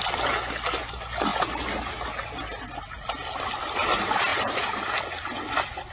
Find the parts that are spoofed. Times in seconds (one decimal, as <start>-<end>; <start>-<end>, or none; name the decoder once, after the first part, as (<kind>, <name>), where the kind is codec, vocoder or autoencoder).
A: 4.3-5.0 (vocoder, BigVGAN v2)